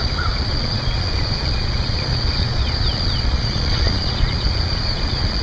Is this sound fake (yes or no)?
yes